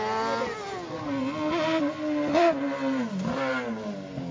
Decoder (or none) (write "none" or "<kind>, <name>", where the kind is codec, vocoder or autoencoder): none